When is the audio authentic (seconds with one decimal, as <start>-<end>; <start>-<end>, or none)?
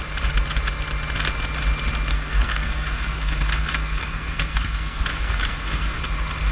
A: 0.0-2.1; 6.0-6.5